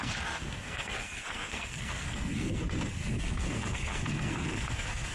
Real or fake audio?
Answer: fake